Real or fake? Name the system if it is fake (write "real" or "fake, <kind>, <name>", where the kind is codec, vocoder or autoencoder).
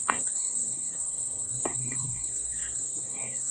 fake, codec, SNAC